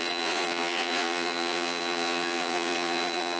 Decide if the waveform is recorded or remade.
remade